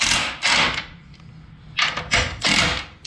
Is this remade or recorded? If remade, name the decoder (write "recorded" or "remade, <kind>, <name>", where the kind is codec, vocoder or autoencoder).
recorded